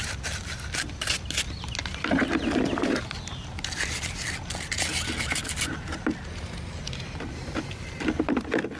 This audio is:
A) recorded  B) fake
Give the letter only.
A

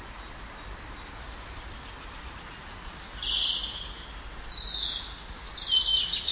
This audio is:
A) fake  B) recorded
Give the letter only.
B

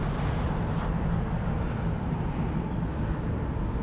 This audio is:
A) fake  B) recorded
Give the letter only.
B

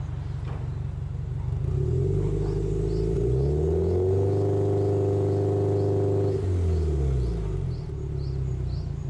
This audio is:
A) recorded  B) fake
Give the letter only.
A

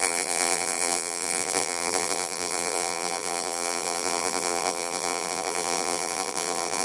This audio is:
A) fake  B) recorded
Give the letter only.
A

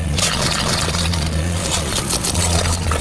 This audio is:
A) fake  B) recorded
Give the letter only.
A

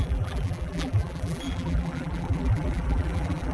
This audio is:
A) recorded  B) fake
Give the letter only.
B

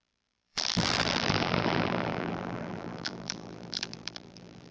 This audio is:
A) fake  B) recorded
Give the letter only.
A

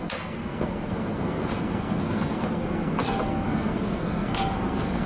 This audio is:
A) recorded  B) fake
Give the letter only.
B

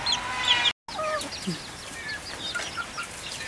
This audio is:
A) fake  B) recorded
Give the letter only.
B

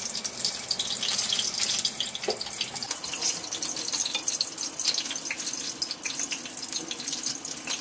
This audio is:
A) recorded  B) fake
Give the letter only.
A